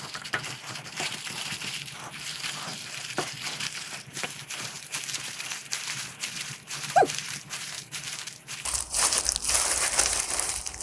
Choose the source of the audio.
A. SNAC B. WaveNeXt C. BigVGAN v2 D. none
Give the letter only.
C